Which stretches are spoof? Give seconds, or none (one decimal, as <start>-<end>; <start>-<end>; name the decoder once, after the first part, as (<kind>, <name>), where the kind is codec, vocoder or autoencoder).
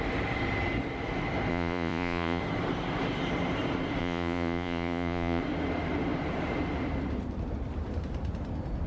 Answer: 1.5-2.4 (vocoder, Vocos); 4.0-5.4